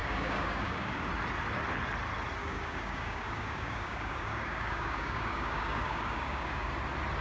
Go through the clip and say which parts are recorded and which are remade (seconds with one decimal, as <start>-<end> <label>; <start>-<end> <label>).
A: 0.0-1.1 remade; 1.1-2.4 recorded; 2.4-6.7 remade; 6.7-7.2 recorded